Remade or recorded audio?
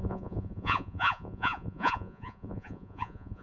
remade